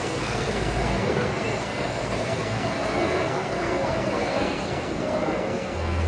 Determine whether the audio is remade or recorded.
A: remade